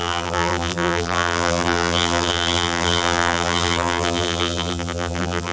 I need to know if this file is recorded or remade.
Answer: remade